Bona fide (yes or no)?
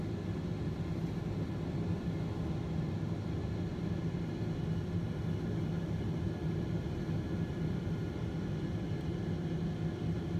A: yes